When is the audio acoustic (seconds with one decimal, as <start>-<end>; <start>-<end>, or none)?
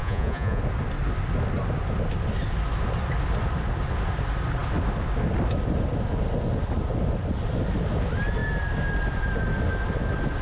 0.6-10.4